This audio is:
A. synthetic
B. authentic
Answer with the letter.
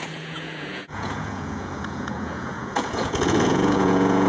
A